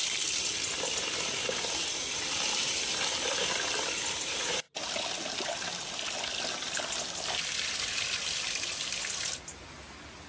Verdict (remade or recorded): recorded